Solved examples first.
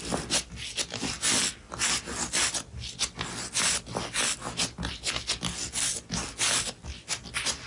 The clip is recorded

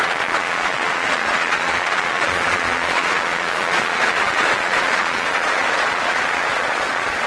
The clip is remade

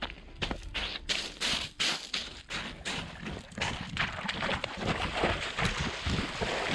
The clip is recorded